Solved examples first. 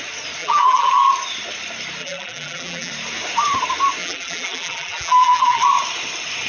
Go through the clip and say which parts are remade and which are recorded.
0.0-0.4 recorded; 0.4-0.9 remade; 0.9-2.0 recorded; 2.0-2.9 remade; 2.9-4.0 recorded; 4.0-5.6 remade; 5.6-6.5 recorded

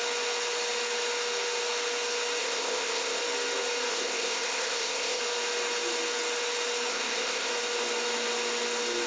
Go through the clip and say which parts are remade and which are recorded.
0.0-2.4 recorded; 2.4-3.2 remade; 3.2-3.9 recorded; 3.9-5.2 remade; 5.2-6.9 recorded; 6.9-7.5 remade; 7.5-9.1 recorded

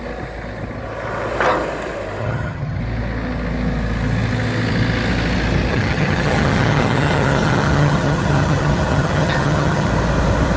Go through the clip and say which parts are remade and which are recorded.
0.0-2.2 recorded; 2.2-2.8 remade; 2.8-5.7 recorded; 5.7-9.9 remade; 9.9-10.6 recorded